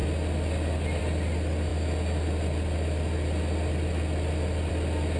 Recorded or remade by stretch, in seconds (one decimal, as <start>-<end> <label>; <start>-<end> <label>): 0.0-5.2 recorded